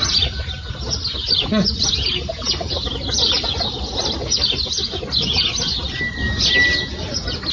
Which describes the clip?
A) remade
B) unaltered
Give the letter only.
B